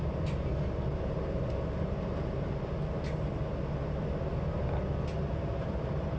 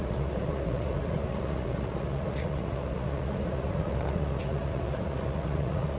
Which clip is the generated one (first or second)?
second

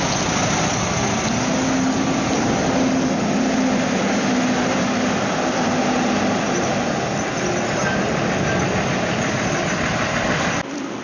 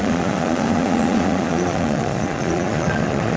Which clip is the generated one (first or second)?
second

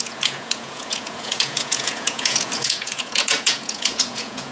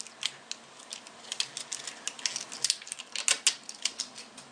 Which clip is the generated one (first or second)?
first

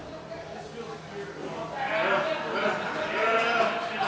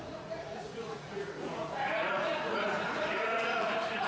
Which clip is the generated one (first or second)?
second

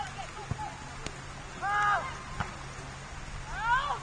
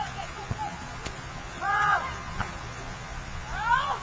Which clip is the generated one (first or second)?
second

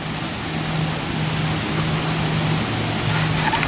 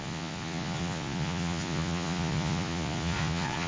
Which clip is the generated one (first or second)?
second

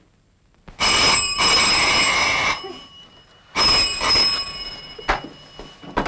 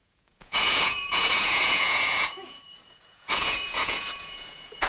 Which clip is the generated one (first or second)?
second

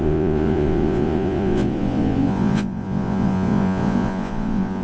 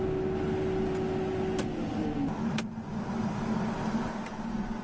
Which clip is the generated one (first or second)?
first